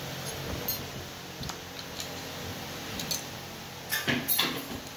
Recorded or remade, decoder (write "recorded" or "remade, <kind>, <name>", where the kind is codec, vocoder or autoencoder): recorded